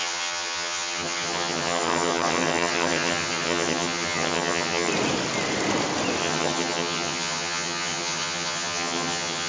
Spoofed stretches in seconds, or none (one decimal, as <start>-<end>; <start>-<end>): 0.0-4.9; 6.2-9.5